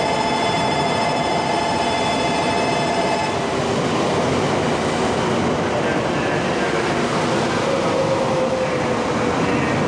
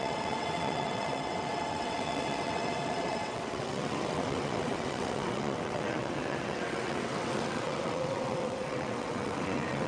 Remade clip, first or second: second